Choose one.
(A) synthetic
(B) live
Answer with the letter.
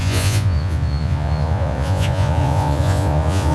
A